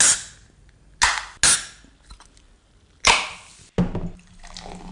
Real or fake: real